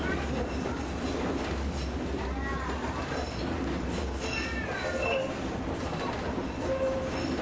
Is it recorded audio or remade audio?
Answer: recorded